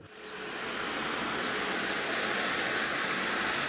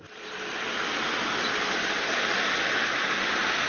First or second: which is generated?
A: second